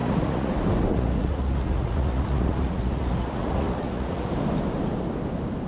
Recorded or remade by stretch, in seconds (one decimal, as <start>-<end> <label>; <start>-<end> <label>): 0.0-0.5 remade; 0.5-0.9 recorded; 0.9-4.3 remade; 4.3-5.7 recorded